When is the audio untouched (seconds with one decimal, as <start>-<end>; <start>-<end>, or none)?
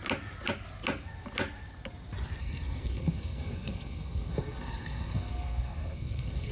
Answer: 0.0-2.4